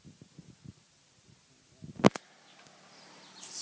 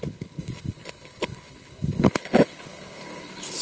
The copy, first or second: second